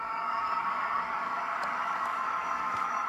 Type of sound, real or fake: fake